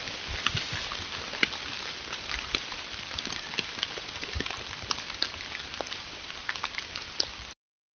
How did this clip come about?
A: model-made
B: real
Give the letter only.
A